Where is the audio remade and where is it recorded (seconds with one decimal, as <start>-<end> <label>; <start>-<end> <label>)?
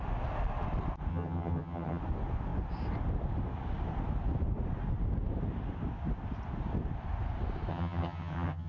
0.0-1.1 recorded; 1.1-2.0 remade; 2.0-7.7 recorded; 7.7-8.7 remade